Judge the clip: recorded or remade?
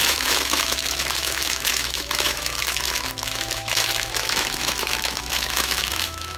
remade